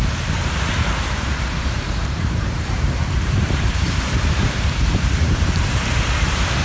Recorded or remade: remade